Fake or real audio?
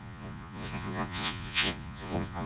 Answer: fake